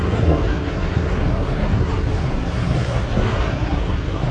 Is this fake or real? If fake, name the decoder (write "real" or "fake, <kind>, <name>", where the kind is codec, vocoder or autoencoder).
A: fake, codec, SNAC